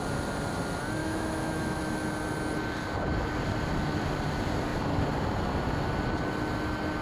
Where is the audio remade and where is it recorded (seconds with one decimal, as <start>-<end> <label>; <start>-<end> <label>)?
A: 0.0-1.0 recorded; 1.0-1.8 remade; 1.8-7.0 recorded